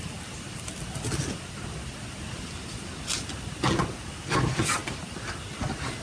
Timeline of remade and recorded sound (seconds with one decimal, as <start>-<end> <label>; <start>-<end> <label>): 0.0-6.0 recorded